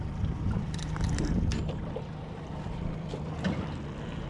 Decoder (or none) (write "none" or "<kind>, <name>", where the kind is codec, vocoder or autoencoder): vocoder, BigVGAN v2